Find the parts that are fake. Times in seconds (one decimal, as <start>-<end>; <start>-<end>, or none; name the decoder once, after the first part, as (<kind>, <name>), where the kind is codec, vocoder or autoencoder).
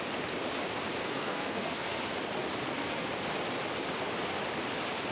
1.0-2.0 (codec, SNAC); 2.6-3.1